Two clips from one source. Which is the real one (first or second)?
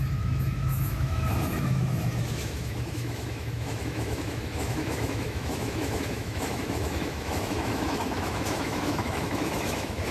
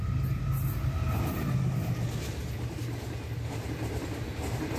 second